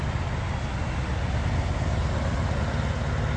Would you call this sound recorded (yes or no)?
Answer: yes